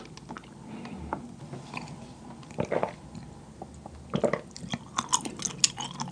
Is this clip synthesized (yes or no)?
no